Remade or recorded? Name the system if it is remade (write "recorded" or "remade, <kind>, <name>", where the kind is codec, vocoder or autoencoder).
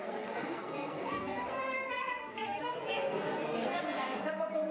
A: remade, codec, SNAC